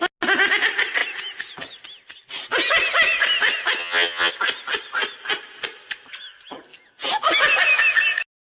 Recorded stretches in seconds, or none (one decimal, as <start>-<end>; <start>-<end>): 0.0-3.8; 4.3-8.5

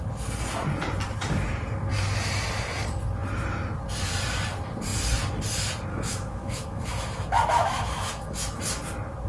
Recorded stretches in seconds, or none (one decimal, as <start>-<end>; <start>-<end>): 0.0-5.9; 8.6-9.3

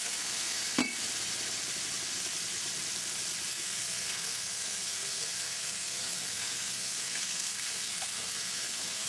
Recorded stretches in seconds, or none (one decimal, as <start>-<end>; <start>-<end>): 0.8-3.5

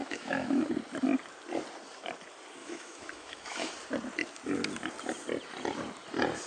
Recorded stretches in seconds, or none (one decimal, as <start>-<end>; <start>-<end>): 0.7-2.6; 3.7-6.5

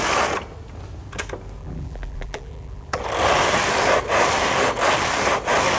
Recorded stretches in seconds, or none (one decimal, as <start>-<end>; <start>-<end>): 0.0-1.6; 3.0-5.8

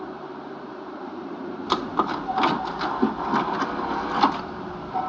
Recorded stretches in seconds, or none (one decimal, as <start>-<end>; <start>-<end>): 1.8-5.1

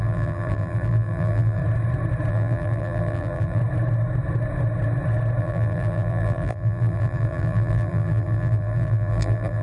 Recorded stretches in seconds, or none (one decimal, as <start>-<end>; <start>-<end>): 1.6-2.3; 3.6-5.4

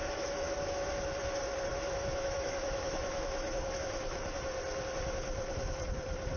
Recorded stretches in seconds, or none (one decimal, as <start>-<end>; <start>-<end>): 0.9-1.7; 4.3-6.4